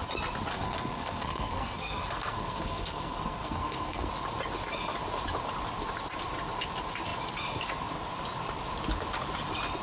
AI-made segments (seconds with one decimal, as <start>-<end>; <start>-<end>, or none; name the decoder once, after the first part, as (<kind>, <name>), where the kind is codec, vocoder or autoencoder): 0.5-4.1 (codec, SNAC)